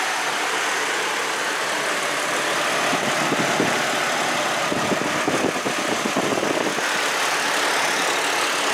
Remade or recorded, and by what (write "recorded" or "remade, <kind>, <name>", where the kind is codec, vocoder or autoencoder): recorded